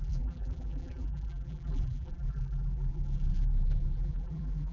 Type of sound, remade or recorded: remade